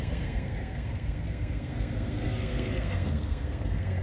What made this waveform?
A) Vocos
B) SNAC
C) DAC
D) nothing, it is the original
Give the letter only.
B